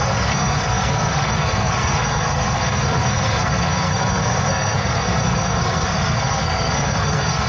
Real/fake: fake